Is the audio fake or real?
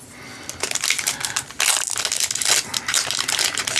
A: real